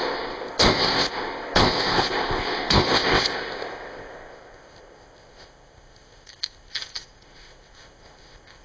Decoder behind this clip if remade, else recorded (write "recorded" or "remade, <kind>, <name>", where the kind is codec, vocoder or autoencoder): remade, codec, ZipCodec